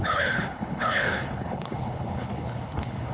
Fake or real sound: fake